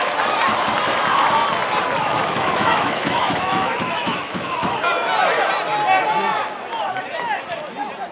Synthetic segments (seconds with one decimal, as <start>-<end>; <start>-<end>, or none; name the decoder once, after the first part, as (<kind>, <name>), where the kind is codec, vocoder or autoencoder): 2.0-4.8 (autoencoder, DAC-VAE)